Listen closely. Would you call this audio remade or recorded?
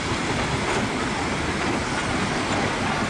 recorded